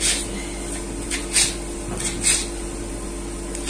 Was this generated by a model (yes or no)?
no